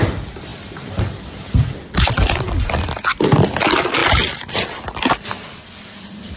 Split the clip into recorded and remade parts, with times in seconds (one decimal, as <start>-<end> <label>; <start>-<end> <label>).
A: 0.0-4.0 remade; 4.0-4.5 recorded; 4.5-6.4 remade